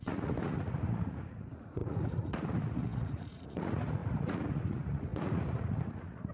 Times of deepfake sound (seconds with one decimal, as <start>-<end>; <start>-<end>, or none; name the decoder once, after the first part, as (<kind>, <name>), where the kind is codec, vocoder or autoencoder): 0.0-6.3 (vocoder, Vocos)